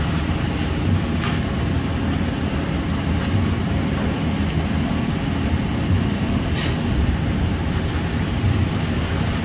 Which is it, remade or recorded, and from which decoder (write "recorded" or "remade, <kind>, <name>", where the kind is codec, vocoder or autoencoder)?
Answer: recorded